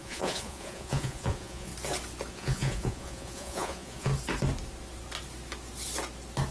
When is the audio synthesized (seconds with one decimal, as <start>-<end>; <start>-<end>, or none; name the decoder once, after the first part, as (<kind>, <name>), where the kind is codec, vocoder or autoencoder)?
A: 0.0-1.7 (vocoder, Vocos); 2.3-4.1